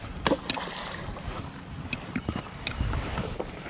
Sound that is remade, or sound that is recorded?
recorded